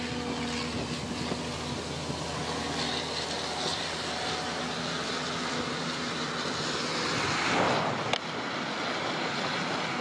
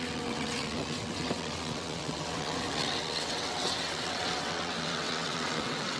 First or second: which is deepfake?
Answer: second